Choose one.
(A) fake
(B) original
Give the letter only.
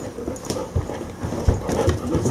B